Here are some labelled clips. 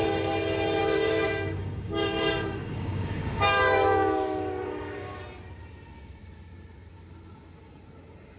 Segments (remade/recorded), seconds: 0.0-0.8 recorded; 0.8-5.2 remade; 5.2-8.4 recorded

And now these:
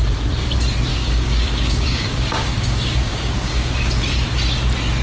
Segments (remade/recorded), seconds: 0.0-0.9 recorded; 0.9-3.9 remade; 3.9-5.0 recorded

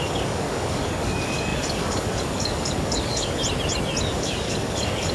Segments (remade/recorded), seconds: 0.0-3.4 remade; 3.4-4.0 recorded; 4.0-5.1 remade

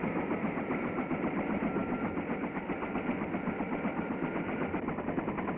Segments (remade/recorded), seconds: 0.0-5.6 recorded

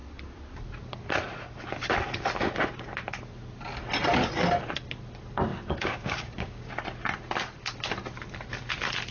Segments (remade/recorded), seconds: 0.0-5.5 recorded; 5.5-6.7 remade; 6.7-9.1 recorded

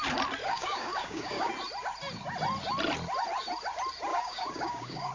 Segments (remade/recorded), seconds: 0.0-0.4 recorded; 0.4-1.5 remade; 1.5-4.1 recorded; 4.1-5.1 remade